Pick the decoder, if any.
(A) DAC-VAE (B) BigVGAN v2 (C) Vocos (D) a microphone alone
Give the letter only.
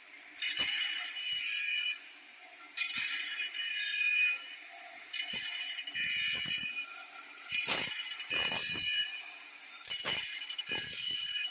B